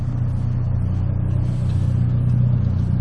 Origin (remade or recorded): recorded